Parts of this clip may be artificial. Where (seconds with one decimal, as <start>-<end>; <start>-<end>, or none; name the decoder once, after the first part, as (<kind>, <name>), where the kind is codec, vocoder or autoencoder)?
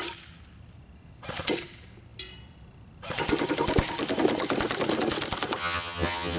5.6-6.4 (vocoder, HiFi-GAN)